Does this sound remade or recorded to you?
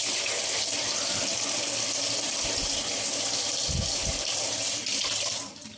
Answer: recorded